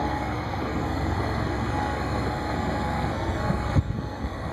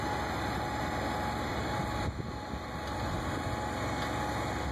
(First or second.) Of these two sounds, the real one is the second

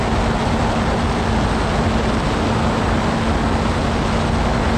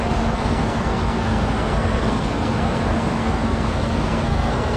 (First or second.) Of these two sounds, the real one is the first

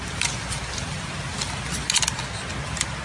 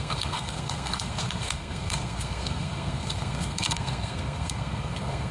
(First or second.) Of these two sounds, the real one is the first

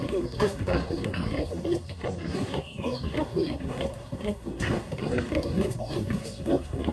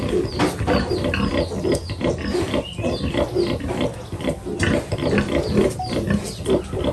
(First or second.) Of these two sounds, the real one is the second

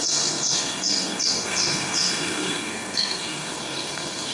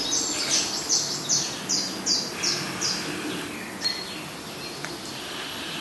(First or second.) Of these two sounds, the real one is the second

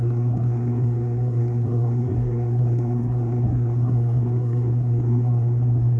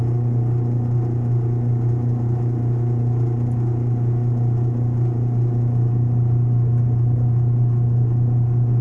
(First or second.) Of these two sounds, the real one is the second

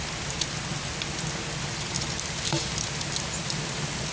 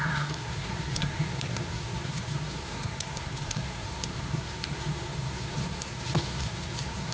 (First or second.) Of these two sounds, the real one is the first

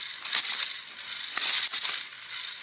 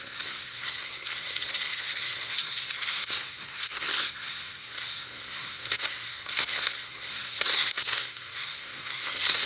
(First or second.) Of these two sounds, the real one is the first